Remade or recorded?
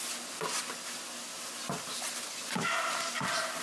recorded